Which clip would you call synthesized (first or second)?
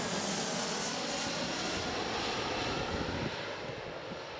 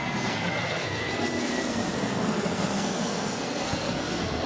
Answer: second